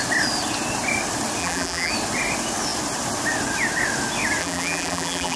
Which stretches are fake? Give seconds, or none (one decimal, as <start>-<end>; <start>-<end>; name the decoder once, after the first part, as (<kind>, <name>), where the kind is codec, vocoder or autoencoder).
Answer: 1.4-1.9 (vocoder, BigVGAN v2); 4.4-5.4